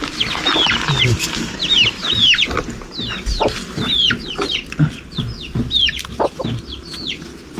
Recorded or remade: recorded